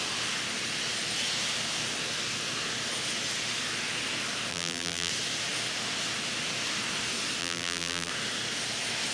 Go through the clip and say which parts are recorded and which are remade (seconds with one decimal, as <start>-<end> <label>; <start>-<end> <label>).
0.0-4.5 recorded; 4.5-5.1 remade; 5.1-7.4 recorded; 7.4-8.1 remade; 8.1-9.1 recorded